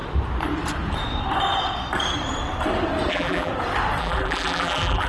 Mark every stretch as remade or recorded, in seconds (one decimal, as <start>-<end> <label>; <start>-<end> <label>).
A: 0.0-3.1 recorded; 3.1-3.5 remade; 3.5-4.0 recorded; 4.0-5.1 remade